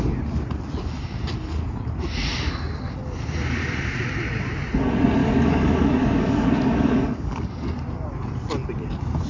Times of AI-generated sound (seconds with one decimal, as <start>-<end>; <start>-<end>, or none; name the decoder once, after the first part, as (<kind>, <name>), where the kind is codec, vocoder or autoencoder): 5.2-7.7 (codec, DAC)